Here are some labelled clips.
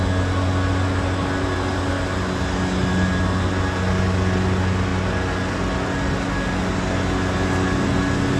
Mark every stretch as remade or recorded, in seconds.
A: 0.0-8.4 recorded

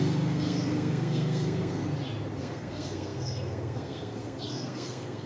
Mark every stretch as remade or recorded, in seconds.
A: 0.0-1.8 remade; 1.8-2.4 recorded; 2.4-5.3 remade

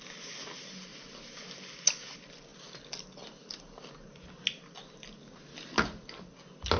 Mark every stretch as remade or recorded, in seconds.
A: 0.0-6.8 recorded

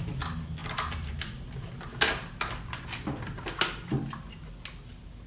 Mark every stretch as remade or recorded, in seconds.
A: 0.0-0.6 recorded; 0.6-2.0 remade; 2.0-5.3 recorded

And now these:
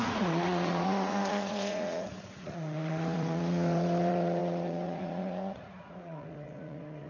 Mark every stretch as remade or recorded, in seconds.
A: 0.0-7.1 remade

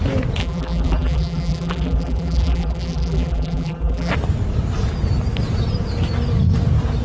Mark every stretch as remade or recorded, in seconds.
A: 0.0-0.4 recorded; 0.4-4.1 remade; 4.1-7.0 recorded

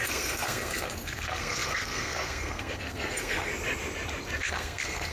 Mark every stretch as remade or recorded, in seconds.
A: 0.0-3.5 remade; 3.5-4.4 recorded; 4.4-5.1 remade

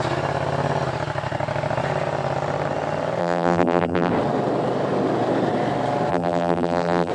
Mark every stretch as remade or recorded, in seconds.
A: 0.0-3.2 recorded; 3.2-4.1 remade; 4.1-6.1 recorded; 6.1-7.1 remade